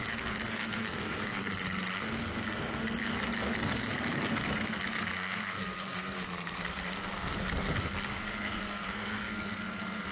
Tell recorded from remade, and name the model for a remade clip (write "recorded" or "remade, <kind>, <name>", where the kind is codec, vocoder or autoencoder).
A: remade, codec, SNAC